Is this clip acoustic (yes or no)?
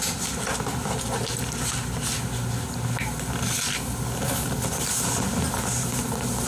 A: yes